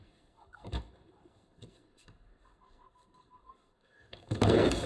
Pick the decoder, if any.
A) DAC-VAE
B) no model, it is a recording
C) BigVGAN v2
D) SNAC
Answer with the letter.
D